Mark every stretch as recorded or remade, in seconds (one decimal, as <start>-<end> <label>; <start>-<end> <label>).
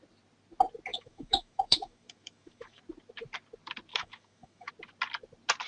0.0-0.9 recorded; 0.9-2.8 remade; 2.8-3.9 recorded; 3.9-4.7 remade; 4.7-5.7 recorded